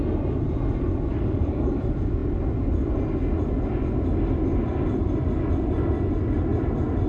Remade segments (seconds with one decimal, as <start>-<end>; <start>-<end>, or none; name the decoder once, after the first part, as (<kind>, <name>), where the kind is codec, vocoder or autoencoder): 1.1-1.8 (codec, DAC)